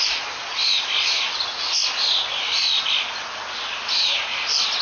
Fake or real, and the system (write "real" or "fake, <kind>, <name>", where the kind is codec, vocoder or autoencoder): real